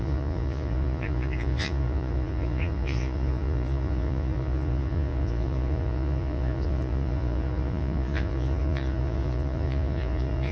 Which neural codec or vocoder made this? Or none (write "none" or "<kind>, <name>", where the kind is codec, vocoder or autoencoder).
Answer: vocoder, Vocos